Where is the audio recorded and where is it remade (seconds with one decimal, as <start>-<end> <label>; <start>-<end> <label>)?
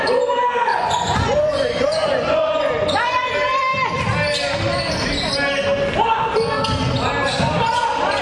0.0-0.7 recorded; 0.7-3.3 remade; 3.3-8.2 recorded